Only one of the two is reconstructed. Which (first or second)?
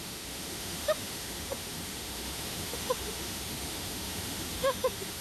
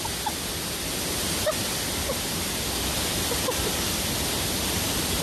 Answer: first